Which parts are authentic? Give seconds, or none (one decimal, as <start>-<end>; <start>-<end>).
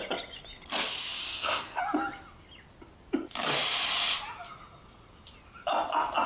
0.0-1.2; 1.8-6.3